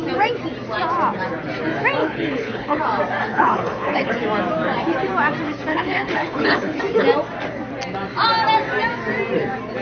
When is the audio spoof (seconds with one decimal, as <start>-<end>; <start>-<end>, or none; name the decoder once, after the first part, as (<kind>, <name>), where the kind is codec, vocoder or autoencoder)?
2.0-2.8 (codec, HILCodec); 3.3-4.1; 5.7-6.8